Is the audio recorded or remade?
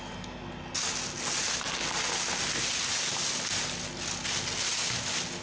recorded